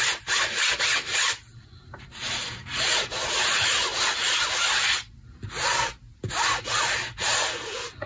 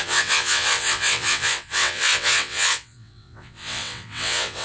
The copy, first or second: second